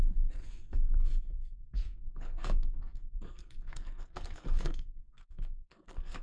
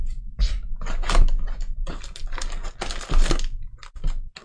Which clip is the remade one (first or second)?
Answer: first